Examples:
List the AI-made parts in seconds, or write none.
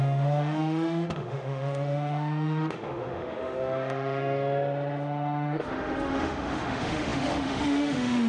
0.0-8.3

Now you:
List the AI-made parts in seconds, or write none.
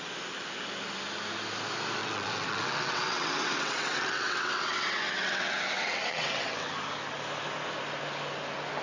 2.0-6.7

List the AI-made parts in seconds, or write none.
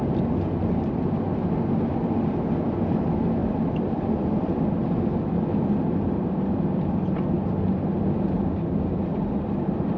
3.4-5.8; 9.1-10.0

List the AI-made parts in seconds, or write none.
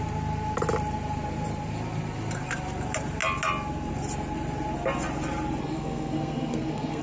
5.6-7.0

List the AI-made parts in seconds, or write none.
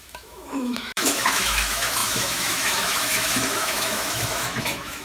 0.0-5.0